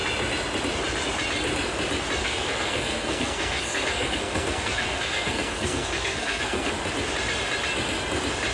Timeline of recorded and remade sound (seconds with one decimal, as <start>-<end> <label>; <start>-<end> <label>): 0.0-2.2 recorded; 2.2-6.7 remade; 6.7-8.5 recorded